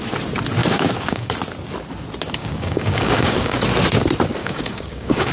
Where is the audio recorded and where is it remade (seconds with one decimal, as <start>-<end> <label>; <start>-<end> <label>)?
0.0-0.6 recorded; 0.6-1.3 remade; 1.3-2.4 recorded; 2.4-3.6 remade; 3.6-4.4 recorded; 4.4-5.3 remade